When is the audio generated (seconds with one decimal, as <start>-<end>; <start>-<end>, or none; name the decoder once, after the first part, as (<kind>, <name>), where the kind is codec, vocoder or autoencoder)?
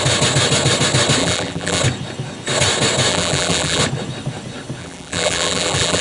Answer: 1.2-1.8 (vocoder, BigVGAN v2); 3.1-3.8; 4.8-6.0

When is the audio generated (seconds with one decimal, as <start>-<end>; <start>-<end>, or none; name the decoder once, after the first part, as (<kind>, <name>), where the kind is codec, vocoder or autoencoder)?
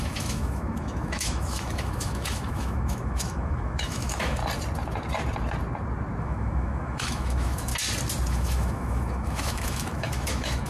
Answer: 0.0-4.4 (autoencoder, DAC-VAE); 6.2-7.7; 8.3-10.7